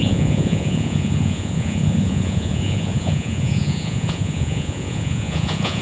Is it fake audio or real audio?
fake